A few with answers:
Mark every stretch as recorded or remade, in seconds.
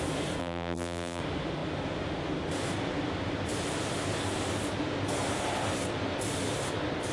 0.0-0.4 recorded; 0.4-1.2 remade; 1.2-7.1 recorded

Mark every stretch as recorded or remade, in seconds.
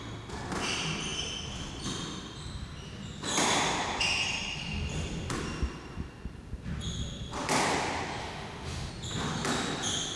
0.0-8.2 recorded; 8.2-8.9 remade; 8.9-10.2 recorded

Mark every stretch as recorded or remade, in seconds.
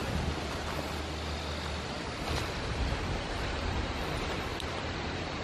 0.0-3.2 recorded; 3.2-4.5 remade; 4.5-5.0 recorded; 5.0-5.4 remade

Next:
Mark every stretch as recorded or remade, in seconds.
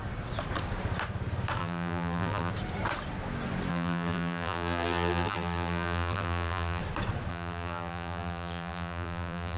0.0-1.6 recorded; 1.6-2.5 remade; 2.5-3.7 recorded; 3.7-6.8 remade; 6.8-7.3 recorded; 7.3-9.6 remade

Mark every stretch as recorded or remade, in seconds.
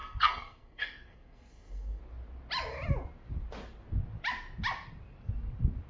0.0-2.0 remade; 2.0-5.9 recorded